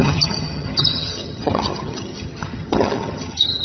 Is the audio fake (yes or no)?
yes